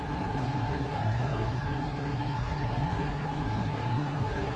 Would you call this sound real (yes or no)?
no